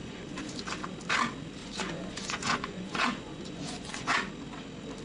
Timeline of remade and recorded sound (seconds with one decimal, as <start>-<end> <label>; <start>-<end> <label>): 0.0-0.6 remade; 0.6-1.6 recorded; 1.6-4.3 remade; 4.3-5.0 recorded

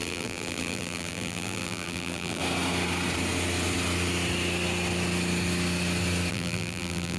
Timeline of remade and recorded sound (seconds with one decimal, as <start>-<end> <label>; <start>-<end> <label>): 0.0-2.4 remade; 2.4-6.3 recorded; 6.3-7.2 remade

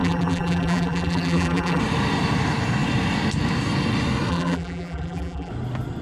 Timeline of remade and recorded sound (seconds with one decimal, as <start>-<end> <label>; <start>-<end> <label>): 0.0-1.8 remade; 1.8-4.3 recorded; 4.3-5.5 remade; 5.5-6.0 recorded

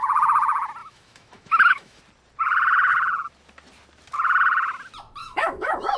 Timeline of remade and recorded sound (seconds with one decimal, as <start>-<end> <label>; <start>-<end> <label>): 0.0-0.8 recorded; 0.8-2.0 remade; 2.0-5.2 recorded; 5.2-6.0 remade

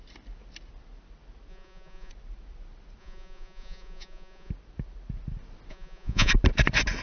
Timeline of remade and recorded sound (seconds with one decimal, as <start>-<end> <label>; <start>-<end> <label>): 0.0-1.5 recorded; 1.5-2.1 remade; 2.1-3.0 recorded; 3.0-4.5 remade; 4.5-5.7 recorded; 5.7-6.3 remade; 6.3-7.0 recorded

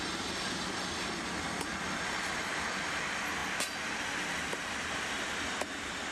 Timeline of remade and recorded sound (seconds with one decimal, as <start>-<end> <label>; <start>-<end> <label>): 0.0-6.1 recorded